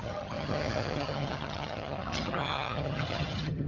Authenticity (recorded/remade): remade